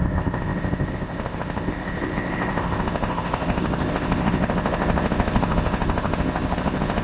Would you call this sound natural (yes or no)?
no